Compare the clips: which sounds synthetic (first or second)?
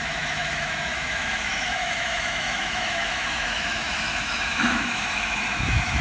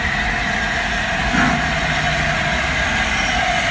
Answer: first